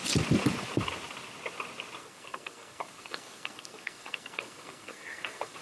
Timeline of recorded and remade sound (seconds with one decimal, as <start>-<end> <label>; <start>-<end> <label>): 0.0-2.0 recorded; 2.0-5.6 remade